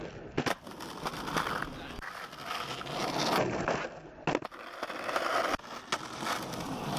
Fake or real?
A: real